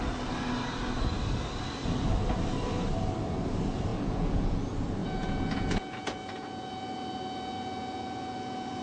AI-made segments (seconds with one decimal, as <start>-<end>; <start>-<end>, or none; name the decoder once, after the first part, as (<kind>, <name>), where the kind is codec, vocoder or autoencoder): 3.9-4.6 (vocoder, Vocos); 5.0-8.8